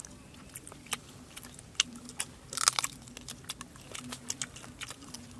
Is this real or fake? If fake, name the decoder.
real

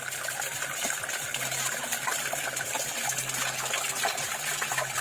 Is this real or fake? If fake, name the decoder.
real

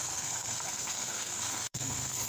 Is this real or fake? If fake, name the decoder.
fake, codec, SNAC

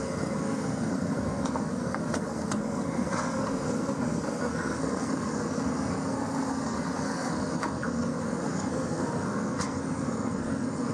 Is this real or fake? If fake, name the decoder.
fake, codec, SNAC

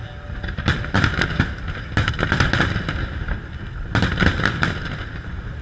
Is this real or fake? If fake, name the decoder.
real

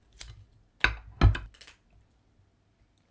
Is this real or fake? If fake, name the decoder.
real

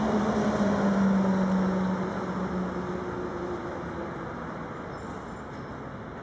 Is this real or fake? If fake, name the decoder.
real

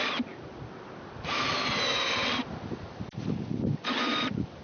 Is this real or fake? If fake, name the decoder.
real